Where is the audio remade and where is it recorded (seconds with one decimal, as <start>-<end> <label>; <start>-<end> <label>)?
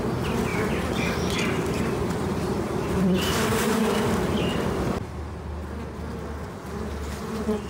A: 0.0-0.5 recorded; 0.5-4.4 remade; 4.4-7.7 recorded